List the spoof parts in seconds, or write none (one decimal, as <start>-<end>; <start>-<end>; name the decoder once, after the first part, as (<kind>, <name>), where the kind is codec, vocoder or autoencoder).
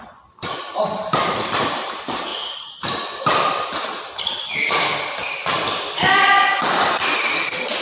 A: none